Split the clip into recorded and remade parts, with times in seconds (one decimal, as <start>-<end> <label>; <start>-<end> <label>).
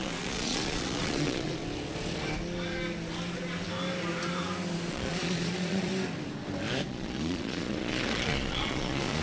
0.0-1.6 remade; 1.6-4.9 recorded; 4.9-5.9 remade; 5.9-6.9 recorded; 6.9-9.2 remade